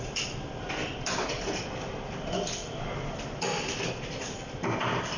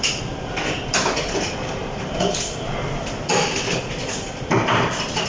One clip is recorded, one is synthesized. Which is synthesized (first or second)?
second